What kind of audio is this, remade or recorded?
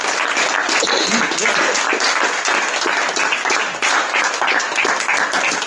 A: recorded